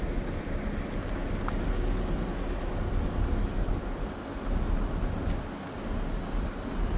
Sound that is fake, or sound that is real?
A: real